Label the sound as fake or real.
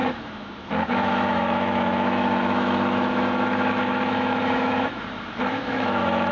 fake